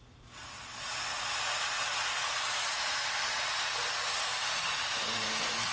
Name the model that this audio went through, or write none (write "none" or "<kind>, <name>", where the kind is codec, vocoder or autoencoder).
none